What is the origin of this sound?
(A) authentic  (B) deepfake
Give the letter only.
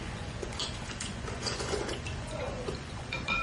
B